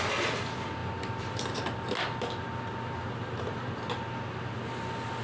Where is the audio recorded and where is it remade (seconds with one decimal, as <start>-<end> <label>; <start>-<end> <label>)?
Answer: 0.0-5.2 recorded